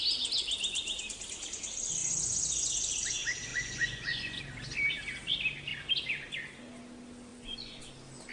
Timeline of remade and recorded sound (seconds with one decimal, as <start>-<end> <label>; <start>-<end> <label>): 0.0-2.0 recorded; 2.0-2.7 remade; 2.7-3.5 recorded; 3.5-4.4 remade; 4.4-7.3 recorded; 7.3-7.8 remade; 7.8-8.3 recorded